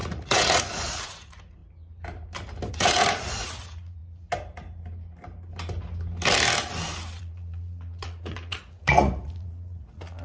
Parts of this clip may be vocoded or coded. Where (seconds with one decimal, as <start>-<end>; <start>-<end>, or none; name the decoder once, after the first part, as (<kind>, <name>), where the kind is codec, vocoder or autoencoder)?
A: 0.0-1.6 (vocoder, Vocos); 2.7-4.0; 7.2-10.2